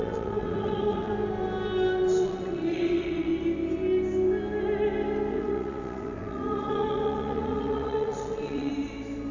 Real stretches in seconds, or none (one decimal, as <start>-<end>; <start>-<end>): 1.1-2.2; 3.3-5.3; 8.7-9.3